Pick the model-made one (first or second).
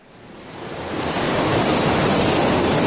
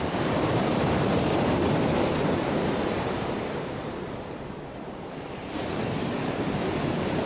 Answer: second